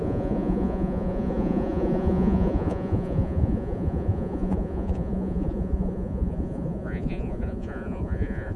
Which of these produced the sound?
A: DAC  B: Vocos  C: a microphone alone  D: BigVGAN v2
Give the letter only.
B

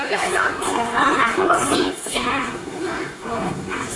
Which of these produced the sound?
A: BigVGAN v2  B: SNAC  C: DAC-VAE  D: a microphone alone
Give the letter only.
B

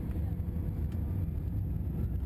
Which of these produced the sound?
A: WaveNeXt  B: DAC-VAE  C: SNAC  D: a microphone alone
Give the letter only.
D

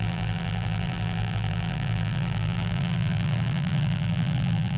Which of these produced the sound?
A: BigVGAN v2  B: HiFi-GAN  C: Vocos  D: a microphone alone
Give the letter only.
A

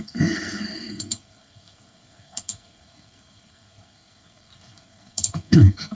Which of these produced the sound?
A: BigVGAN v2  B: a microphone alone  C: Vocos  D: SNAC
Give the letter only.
D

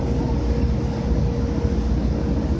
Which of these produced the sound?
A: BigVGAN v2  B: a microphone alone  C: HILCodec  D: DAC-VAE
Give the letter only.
B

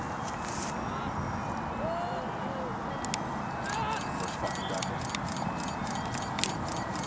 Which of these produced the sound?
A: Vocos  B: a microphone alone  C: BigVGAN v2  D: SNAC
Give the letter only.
B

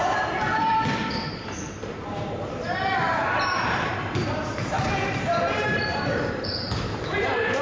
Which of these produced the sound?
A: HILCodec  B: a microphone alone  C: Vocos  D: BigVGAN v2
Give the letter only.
D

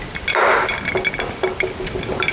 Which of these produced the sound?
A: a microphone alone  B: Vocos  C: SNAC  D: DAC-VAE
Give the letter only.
A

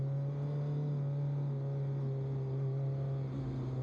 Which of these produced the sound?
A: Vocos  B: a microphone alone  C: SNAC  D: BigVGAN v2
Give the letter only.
B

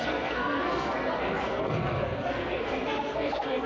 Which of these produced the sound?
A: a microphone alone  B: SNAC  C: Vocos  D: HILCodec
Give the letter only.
B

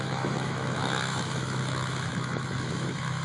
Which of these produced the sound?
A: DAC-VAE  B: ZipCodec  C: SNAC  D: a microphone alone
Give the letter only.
A